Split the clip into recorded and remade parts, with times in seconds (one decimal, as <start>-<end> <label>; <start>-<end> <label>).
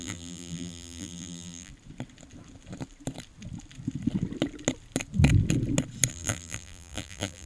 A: 0.0-1.7 remade; 1.7-6.1 recorded; 6.1-7.5 remade